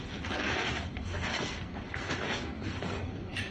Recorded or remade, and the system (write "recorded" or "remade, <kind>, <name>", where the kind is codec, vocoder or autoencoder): remade, codec, SNAC